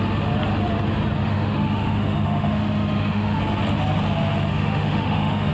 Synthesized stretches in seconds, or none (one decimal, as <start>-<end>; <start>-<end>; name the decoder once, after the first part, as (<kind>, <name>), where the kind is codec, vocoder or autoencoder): 1.3-3.4 (autoencoder, DAC-VAE); 4.5-5.5